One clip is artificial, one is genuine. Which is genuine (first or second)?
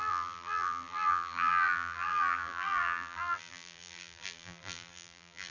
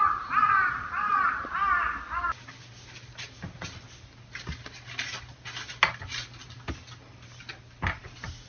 second